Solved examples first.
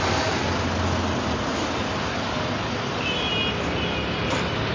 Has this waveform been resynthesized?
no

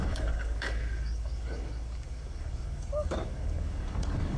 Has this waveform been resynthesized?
yes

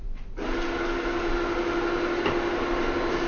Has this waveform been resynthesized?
no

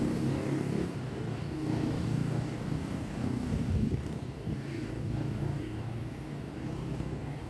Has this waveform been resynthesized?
yes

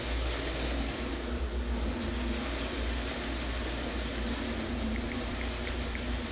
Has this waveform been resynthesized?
no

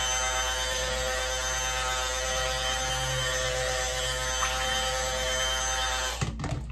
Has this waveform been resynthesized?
no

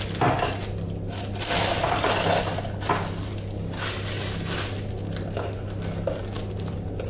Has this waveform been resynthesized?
no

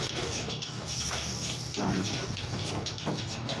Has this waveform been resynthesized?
yes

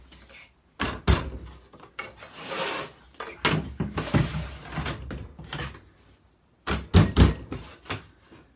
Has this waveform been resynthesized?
no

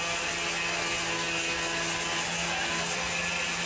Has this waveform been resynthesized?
no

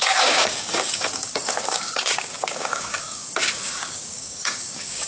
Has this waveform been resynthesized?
yes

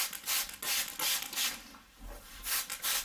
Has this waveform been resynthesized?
no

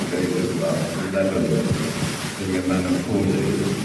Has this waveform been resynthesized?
no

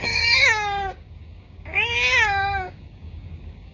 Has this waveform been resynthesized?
yes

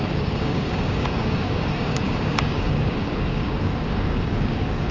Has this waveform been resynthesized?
yes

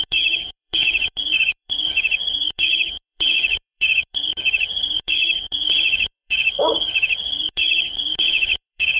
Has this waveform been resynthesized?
yes